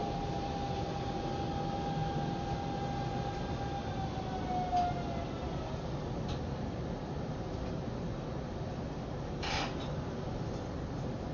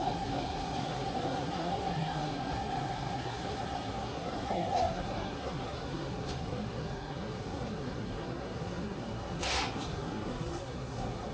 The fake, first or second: second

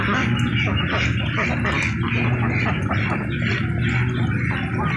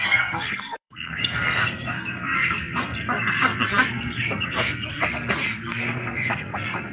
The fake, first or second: second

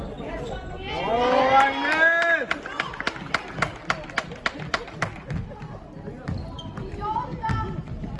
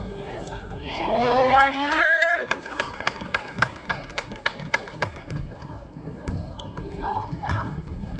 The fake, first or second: second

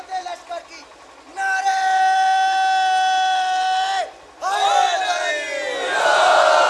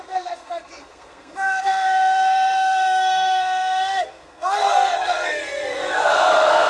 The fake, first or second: second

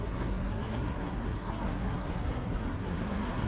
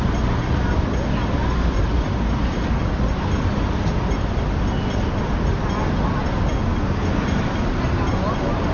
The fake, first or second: first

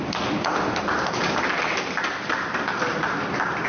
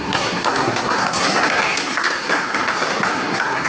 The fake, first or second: second